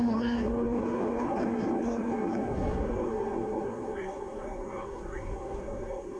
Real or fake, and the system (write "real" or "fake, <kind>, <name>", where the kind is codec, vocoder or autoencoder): fake, codec, SNAC